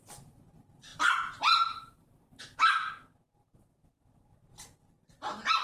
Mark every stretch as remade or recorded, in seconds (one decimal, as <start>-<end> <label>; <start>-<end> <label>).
0.0-0.9 recorded; 0.9-2.4 remade; 2.4-5.6 recorded